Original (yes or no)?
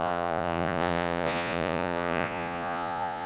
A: no